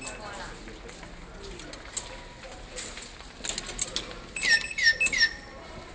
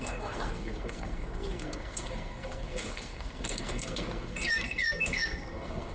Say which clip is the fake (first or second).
second